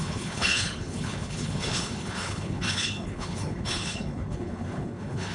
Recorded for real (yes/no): no